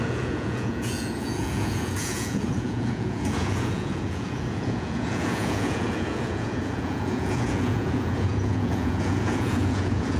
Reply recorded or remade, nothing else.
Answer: remade